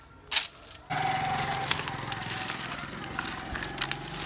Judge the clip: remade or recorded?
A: recorded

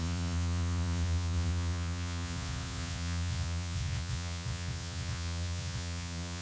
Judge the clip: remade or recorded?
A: remade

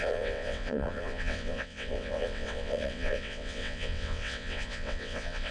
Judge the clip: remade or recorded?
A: remade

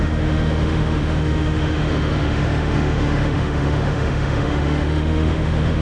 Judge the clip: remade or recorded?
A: remade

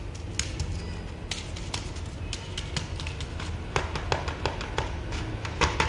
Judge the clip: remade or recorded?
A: recorded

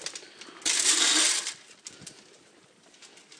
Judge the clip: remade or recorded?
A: remade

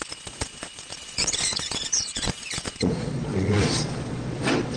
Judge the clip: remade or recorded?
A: remade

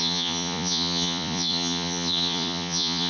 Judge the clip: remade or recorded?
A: remade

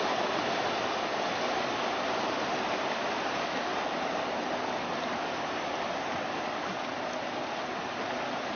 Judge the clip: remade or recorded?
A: remade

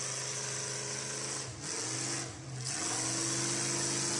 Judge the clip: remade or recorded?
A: recorded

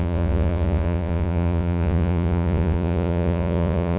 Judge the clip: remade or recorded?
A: remade